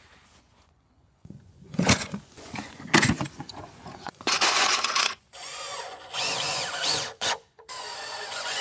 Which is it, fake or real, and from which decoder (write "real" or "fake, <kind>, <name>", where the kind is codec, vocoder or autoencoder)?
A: fake, vocoder, Vocos